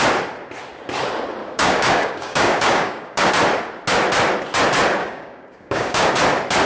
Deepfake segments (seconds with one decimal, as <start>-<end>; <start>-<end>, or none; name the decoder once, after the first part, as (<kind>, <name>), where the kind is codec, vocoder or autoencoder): 1.4-3.3 (codec, DAC); 5.0-6.1